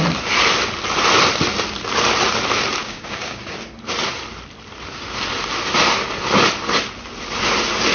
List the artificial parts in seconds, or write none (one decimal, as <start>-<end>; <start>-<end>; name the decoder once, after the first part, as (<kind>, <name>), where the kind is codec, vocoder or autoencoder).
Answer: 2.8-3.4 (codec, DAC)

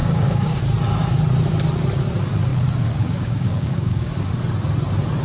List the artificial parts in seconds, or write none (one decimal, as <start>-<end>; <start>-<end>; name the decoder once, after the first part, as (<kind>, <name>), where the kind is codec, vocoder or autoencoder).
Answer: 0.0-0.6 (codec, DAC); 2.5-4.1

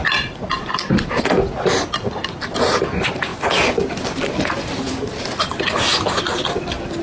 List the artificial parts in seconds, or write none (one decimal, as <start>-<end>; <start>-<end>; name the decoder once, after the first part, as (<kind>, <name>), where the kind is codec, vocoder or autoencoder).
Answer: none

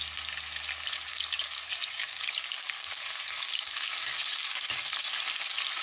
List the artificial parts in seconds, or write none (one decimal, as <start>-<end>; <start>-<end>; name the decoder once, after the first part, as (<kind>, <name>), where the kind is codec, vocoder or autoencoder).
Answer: 1.1-4.6 (codec, DAC)

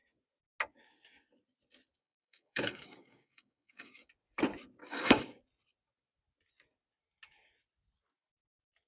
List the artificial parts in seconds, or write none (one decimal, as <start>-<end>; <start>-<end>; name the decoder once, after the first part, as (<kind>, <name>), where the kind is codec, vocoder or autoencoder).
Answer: 2.0-4.1 (codec, DAC); 4.8-5.4

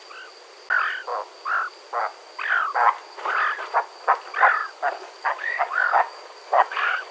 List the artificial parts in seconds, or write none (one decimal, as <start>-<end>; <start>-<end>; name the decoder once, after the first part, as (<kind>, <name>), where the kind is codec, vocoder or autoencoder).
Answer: 4.6-7.1 (codec, DAC)

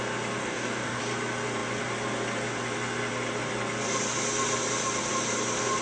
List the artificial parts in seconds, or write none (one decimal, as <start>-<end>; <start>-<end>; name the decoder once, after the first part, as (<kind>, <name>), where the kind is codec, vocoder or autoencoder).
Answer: 0.4-1.0 (codec, DAC)

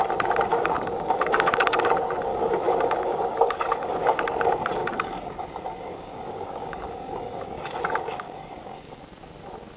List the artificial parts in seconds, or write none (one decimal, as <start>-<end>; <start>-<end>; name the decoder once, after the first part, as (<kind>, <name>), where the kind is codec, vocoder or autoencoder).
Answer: 0.5-1.8 (codec, DAC); 2.3-4.2; 4.8-9.0